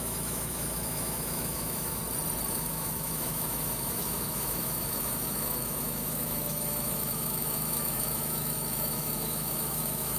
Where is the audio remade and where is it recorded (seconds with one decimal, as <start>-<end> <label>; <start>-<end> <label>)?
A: 0.0-2.0 remade; 2.0-2.5 recorded; 2.5-10.2 remade